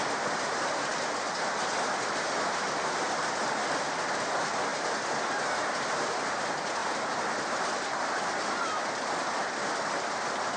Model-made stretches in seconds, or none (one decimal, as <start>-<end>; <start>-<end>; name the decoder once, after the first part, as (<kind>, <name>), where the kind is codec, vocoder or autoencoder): none